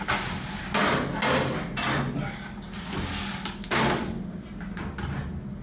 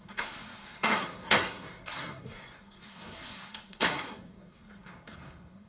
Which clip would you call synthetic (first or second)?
second